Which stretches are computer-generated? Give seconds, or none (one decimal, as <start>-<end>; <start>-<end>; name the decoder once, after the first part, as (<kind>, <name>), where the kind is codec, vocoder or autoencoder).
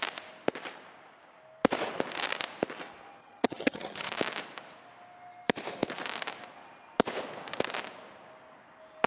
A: 3.2-4.1 (vocoder, HiFi-GAN)